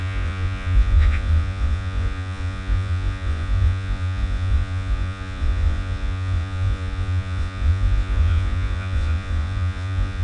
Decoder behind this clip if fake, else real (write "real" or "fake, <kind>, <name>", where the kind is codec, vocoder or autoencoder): fake, vocoder, Vocos